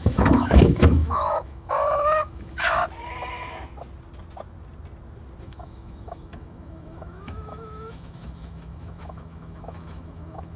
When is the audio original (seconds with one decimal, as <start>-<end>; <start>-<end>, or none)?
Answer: 2.8-5.4